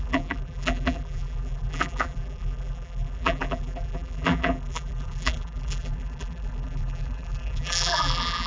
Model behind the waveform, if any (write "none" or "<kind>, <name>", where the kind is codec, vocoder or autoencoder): vocoder, BigVGAN v2